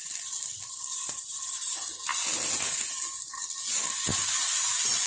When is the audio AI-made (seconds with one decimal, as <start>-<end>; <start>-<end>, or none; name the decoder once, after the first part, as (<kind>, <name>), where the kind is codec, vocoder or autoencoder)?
0.9-1.7 (vocoder, Vocos)